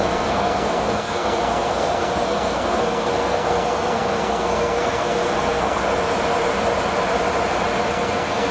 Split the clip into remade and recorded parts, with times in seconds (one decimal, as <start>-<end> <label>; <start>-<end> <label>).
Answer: 0.0-5.8 remade; 5.8-7.9 recorded; 7.9-8.5 remade